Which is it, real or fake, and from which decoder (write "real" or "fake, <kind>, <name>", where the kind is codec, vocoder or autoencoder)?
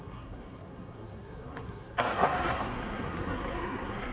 fake, codec, SNAC